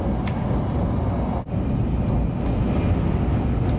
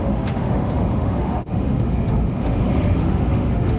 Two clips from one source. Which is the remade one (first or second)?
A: second